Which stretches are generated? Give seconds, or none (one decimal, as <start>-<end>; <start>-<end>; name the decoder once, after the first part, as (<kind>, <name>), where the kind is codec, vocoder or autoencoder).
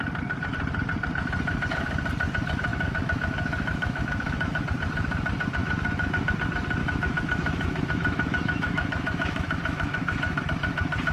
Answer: 2.7-4.6 (autoencoder, DAC-VAE); 5.6-6.3; 6.8-10.4